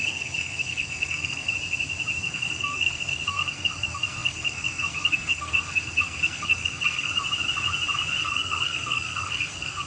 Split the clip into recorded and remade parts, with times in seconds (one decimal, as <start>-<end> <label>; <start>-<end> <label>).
0.0-1.5 remade; 1.5-2.2 recorded; 2.2-7.1 remade; 7.1-8.2 recorded; 8.2-9.9 remade